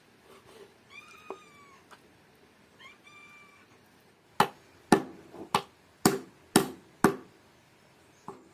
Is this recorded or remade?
recorded